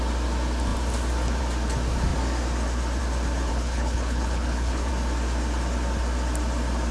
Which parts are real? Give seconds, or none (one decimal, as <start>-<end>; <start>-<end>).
0.0-3.5; 4.9-6.9